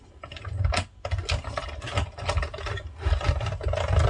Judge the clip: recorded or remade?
recorded